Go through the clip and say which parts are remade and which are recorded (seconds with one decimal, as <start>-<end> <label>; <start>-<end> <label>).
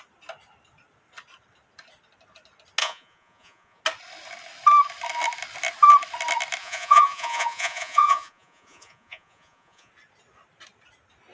0.0-2.8 recorded; 2.8-3.8 remade; 3.8-6.6 recorded; 6.6-9.9 remade; 9.9-11.3 recorded